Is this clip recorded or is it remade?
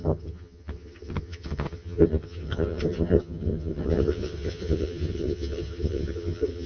remade